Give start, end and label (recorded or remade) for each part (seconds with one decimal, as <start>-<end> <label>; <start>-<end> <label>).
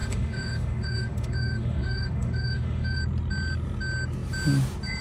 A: 0.0-3.0 remade; 3.0-5.0 recorded